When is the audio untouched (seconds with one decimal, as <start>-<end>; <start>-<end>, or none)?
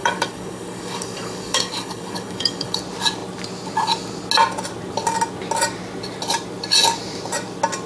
2.8-7.9